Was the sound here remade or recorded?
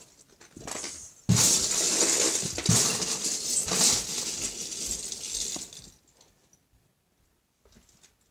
recorded